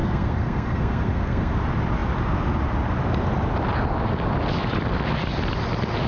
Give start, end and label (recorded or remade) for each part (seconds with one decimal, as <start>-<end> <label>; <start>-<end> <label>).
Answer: 0.0-1.5 remade; 1.5-6.1 recorded